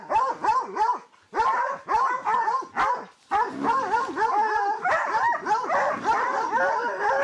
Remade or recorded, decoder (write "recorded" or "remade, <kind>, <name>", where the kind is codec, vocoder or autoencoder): recorded